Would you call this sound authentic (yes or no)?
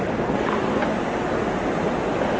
yes